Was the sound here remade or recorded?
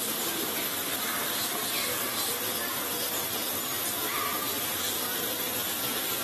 recorded